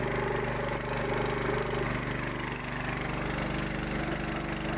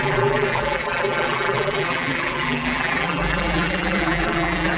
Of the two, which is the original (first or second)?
first